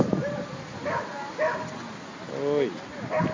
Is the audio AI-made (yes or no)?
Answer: no